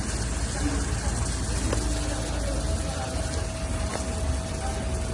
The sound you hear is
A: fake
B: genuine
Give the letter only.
B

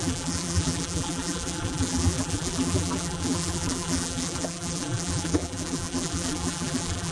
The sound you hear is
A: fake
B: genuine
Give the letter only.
A